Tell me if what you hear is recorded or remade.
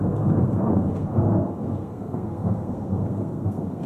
remade